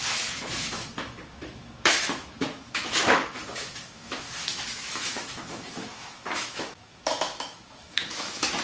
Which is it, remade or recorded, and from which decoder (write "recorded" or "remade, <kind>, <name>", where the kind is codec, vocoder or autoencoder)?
remade, autoencoder, DAC-VAE